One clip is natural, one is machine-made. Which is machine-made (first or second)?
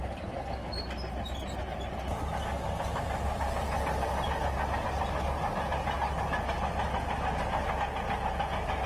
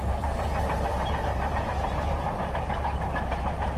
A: second